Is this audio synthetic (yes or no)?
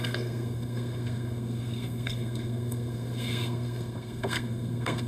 yes